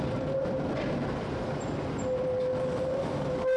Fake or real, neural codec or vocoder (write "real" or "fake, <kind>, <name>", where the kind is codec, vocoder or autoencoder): real